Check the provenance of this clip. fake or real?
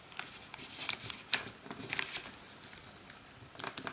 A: fake